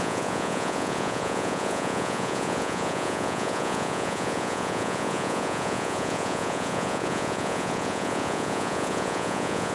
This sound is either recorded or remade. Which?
remade